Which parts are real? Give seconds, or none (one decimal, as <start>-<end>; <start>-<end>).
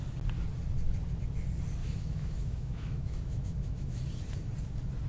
0.0-1.8; 4.0-5.1